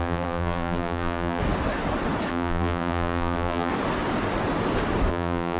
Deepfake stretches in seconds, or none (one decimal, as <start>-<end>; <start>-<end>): 0.0-1.4; 2.3-3.7; 5.1-5.6